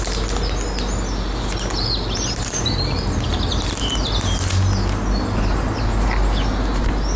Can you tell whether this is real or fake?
real